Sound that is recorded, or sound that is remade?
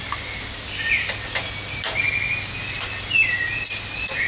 recorded